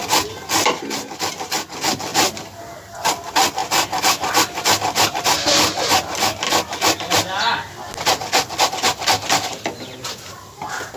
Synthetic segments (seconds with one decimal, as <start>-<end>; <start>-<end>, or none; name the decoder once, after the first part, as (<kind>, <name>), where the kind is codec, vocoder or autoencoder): none